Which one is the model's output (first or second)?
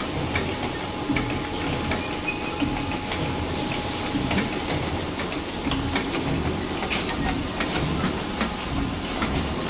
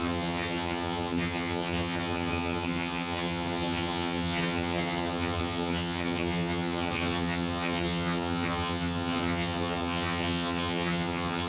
second